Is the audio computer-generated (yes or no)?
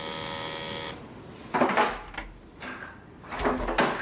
no